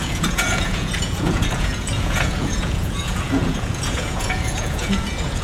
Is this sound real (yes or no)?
no